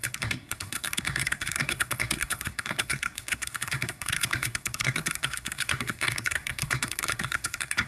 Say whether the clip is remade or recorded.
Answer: remade